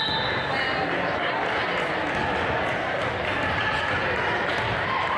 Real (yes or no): yes